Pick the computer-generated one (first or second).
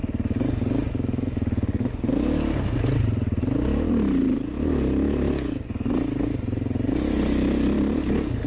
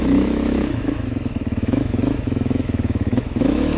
second